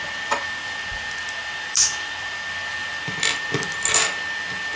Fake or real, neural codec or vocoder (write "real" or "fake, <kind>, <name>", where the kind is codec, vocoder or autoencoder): real